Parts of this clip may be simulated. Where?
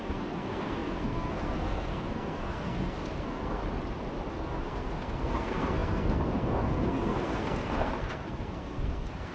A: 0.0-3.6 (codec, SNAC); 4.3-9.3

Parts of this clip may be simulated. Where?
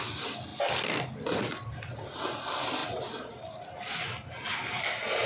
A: none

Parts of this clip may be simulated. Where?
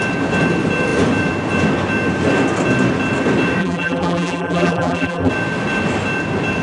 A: 3.6-5.3 (vocoder, BigVGAN v2)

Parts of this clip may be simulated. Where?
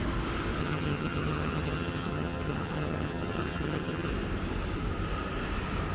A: 0.6-4.1 (vocoder, HiFi-GAN)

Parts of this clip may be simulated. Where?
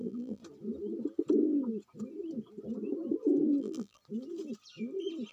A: 0.0-0.4 (vocoder, BigVGAN v2); 3.6-4.0